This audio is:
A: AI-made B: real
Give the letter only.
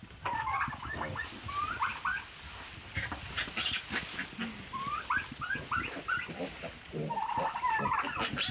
B